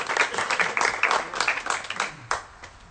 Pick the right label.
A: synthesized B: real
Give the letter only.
B